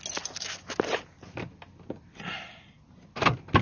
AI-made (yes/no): no